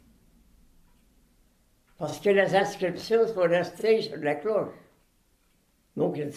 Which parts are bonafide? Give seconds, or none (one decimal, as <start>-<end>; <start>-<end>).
0.0-6.4